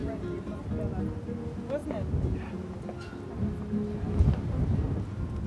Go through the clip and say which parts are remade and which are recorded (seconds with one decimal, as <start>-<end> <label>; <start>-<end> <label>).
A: 0.0-0.6 remade; 0.6-5.5 recorded